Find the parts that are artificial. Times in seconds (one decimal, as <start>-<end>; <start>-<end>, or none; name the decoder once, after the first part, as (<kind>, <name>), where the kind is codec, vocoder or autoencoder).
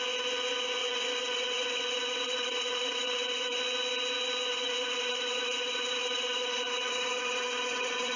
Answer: 0.8-3.6 (vocoder, WaveNeXt); 4.5-8.2